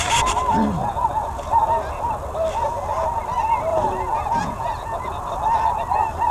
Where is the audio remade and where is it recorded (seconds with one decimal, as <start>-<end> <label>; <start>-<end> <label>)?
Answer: 0.0-0.8 recorded; 0.8-1.4 remade; 1.4-3.7 recorded; 3.7-5.1 remade; 5.1-6.3 recorded